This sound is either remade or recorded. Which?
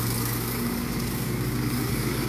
remade